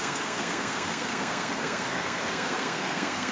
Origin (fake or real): fake